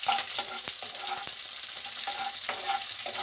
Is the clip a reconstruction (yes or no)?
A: no